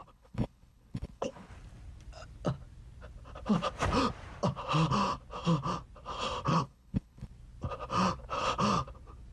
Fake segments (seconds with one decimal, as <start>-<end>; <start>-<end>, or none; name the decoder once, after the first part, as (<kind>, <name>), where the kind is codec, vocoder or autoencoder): 0.0-1.5 (codec, HILCodec); 6.5-7.3